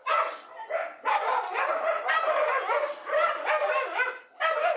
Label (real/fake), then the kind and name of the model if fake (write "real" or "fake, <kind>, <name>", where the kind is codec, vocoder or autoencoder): real